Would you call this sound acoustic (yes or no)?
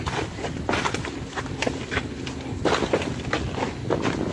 yes